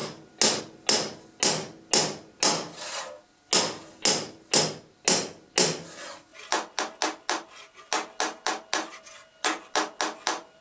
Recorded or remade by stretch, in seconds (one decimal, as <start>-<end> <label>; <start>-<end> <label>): 0.0-10.6 recorded